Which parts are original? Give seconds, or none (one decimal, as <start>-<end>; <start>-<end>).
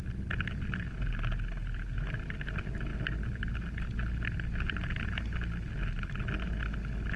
0.0-7.2